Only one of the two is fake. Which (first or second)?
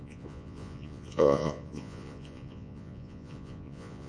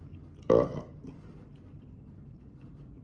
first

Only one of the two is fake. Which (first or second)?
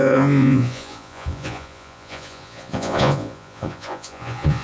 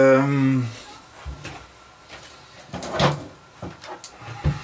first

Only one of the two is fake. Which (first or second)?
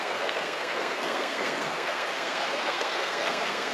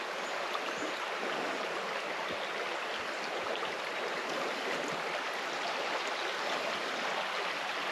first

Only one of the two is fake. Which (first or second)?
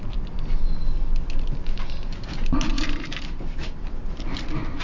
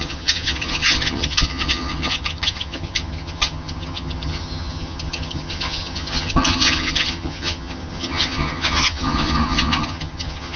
second